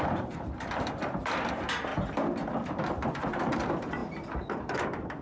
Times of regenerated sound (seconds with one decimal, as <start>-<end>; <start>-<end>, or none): 0.0-1.9; 2.5-4.0; 4.6-5.2